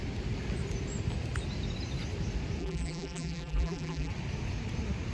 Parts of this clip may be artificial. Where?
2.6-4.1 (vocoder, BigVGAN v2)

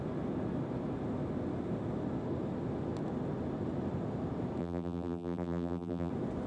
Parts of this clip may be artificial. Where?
4.6-6.1 (vocoder, BigVGAN v2)

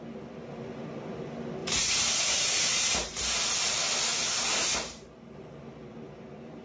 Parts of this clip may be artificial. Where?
1.6-3.4 (vocoder, BigVGAN v2); 4.1-5.4

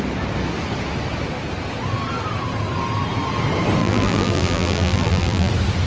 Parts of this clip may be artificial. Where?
3.8-5.5 (vocoder, BigVGAN v2)

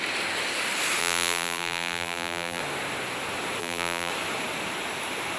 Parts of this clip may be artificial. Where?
1.0-2.6 (vocoder, BigVGAN v2); 3.6-4.1

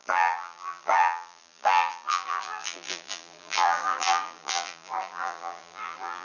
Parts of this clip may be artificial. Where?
0.0-6.2 (vocoder, BigVGAN v2)